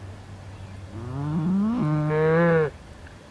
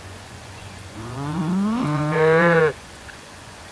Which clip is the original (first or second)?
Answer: first